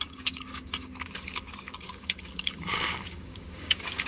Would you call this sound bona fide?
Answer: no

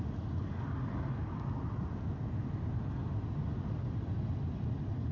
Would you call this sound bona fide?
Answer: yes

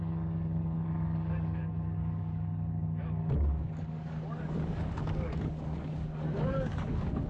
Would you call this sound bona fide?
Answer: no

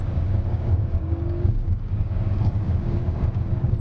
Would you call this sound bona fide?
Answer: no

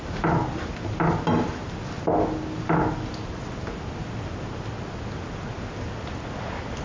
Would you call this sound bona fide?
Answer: yes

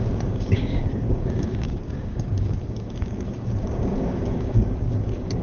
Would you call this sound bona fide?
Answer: no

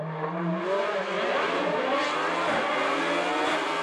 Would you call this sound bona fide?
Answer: yes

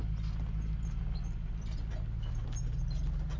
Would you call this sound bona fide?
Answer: yes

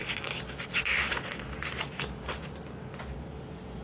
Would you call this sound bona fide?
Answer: yes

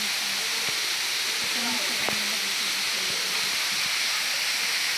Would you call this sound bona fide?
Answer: yes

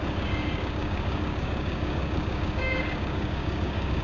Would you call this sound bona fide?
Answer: no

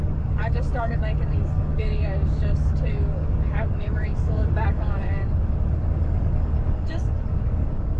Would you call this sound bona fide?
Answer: no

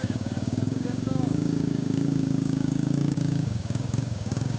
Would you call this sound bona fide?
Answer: no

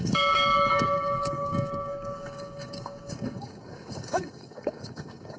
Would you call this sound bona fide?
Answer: no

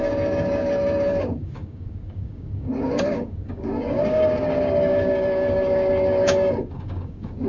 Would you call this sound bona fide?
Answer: no